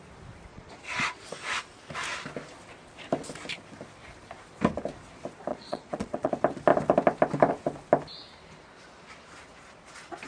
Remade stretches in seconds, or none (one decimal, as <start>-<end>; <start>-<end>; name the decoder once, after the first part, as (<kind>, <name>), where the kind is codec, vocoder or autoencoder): 0.5-1.3 (vocoder, Vocos); 5.5-6.3